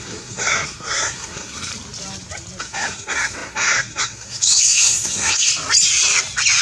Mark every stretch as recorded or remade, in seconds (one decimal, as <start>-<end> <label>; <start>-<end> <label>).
0.0-1.7 remade; 1.7-2.6 recorded; 2.6-5.5 remade; 5.5-6.6 recorded